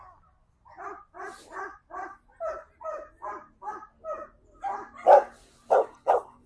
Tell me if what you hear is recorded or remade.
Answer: recorded